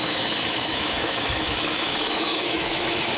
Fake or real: fake